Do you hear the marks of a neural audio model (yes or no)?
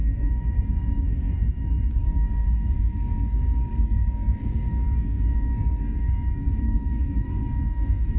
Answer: yes